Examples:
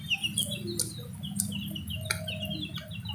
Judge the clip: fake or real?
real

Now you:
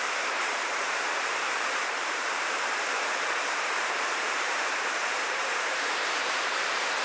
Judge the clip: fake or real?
fake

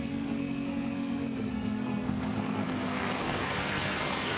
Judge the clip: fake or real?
fake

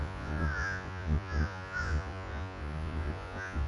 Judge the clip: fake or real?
fake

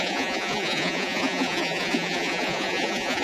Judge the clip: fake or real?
fake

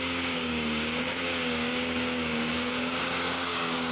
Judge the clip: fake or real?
fake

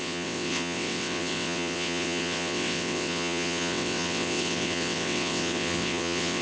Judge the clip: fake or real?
fake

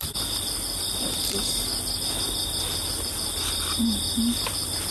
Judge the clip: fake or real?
real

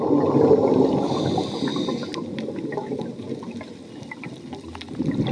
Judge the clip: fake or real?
real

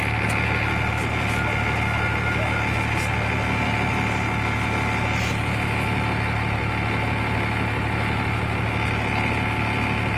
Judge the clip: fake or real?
real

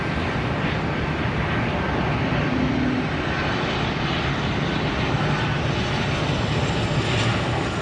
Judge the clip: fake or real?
real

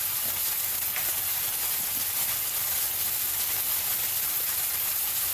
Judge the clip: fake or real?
real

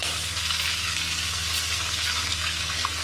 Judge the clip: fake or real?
fake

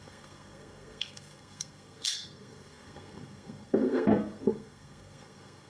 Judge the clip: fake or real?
fake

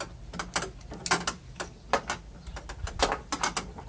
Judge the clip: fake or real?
real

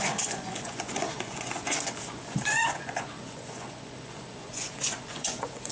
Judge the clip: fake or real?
fake